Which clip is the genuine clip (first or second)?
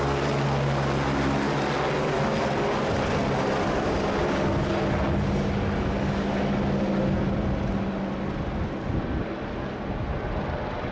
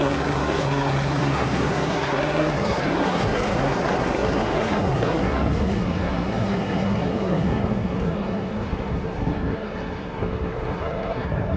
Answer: first